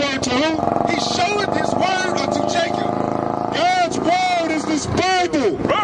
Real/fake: real